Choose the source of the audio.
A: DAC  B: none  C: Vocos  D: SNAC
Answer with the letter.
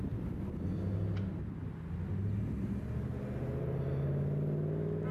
B